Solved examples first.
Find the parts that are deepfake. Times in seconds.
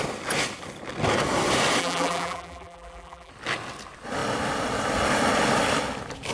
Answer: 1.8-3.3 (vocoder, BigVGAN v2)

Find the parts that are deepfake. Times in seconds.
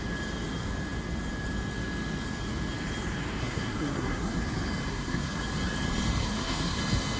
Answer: 3.4-4.4 (codec, SNAC); 4.9-5.4; 6.2-6.8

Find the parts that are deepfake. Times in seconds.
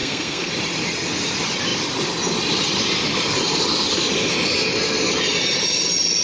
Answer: 0.0-0.5 (codec, SNAC)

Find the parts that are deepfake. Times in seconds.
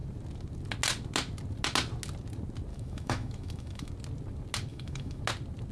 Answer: 2.7-3.9 (autoencoder, DAC-VAE); 4.7-5.2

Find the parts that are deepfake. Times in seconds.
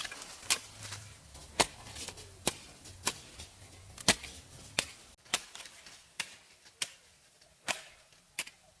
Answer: 5.3-6.2 (vocoder, BigVGAN v2)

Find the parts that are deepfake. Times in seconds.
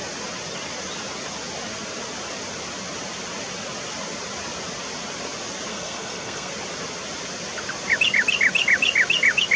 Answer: 5.7-6.5 (codec, SNAC)